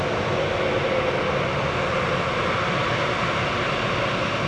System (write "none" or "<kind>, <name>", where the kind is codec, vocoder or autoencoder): none